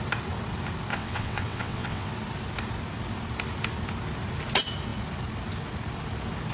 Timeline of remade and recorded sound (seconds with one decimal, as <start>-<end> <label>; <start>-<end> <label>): 0.0-0.9 recorded; 0.9-2.1 remade; 2.1-6.5 recorded